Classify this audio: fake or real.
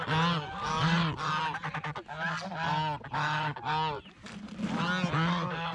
real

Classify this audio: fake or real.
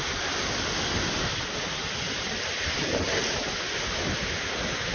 real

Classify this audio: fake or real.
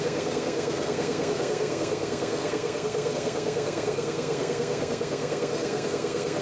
fake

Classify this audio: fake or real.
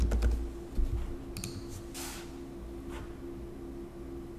real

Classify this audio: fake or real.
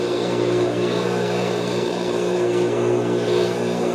fake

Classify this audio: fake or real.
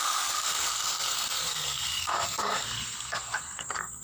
fake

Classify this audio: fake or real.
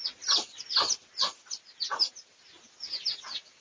real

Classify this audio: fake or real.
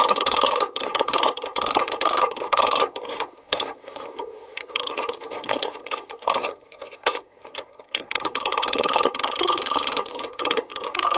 fake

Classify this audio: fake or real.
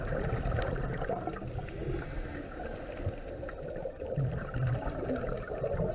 real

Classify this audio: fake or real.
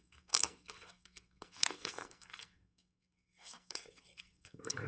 fake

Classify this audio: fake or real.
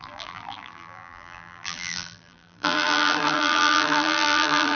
fake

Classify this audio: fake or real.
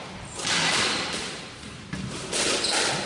real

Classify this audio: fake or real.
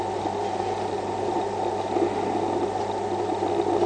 real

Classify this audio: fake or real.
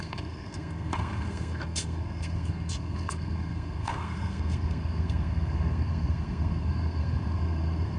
fake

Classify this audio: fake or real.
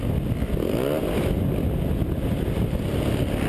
real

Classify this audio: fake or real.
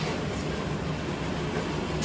real